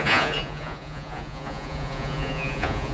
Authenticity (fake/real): fake